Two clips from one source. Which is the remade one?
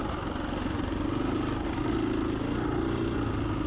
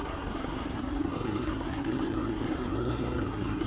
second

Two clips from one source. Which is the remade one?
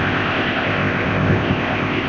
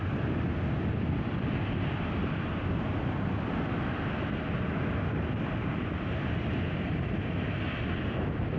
first